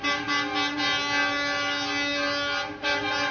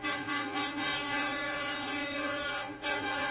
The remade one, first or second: second